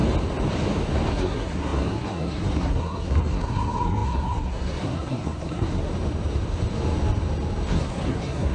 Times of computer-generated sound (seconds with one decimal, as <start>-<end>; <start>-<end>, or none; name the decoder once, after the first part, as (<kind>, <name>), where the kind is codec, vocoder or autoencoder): 1.1-5.9 (codec, SNAC); 7.7-8.5